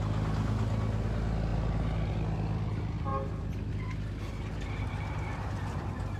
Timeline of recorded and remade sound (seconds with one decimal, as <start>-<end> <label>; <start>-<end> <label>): 0.0-1.5 recorded; 1.5-2.1 remade; 2.1-6.2 recorded